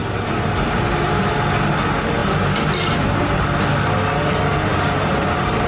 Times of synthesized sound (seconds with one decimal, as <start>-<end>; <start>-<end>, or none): 0.0-0.5; 4.7-5.7